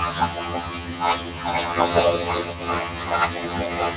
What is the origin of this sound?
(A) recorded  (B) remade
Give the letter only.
B